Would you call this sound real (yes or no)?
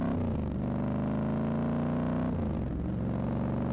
yes